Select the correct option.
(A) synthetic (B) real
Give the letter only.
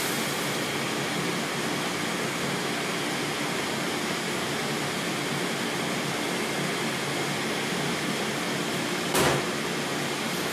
B